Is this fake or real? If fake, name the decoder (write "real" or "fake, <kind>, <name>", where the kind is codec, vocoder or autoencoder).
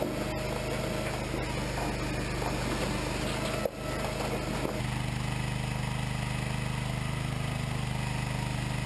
real